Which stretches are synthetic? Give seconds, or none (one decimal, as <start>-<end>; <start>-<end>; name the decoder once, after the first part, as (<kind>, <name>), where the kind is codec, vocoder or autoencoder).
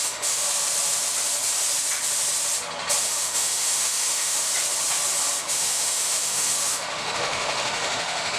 0.0-0.4 (autoencoder, DAC-VAE); 3.0-4.5; 5.4-8.4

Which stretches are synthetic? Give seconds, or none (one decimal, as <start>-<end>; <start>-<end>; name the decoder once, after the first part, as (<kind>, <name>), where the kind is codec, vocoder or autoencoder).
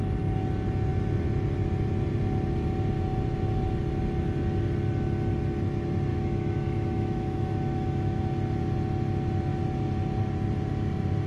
6.1-8.2 (autoencoder, DAC-VAE)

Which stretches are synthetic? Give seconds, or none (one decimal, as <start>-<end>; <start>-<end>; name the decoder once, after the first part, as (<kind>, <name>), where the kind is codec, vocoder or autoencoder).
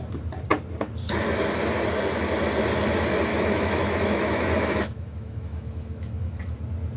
3.3-6.4 (autoencoder, DAC-VAE)